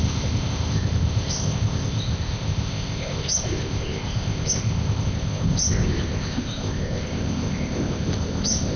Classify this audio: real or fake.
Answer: fake